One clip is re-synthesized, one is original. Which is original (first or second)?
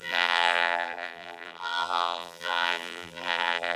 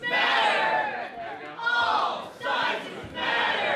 second